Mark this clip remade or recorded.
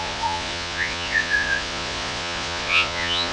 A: remade